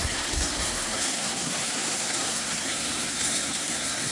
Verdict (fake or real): fake